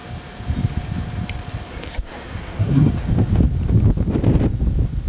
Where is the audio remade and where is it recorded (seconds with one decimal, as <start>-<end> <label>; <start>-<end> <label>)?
0.0-1.7 recorded; 1.7-2.9 remade; 2.9-5.1 recorded